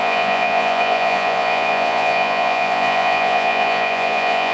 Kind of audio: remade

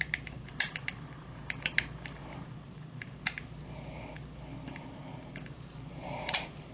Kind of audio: remade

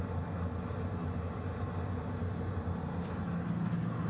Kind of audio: recorded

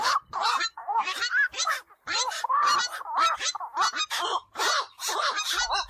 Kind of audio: remade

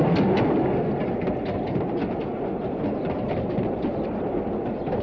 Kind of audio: recorded